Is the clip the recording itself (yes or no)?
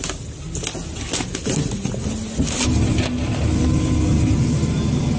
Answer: yes